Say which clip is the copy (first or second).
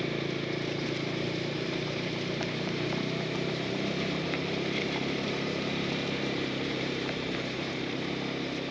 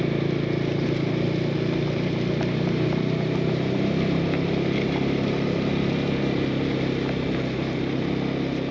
first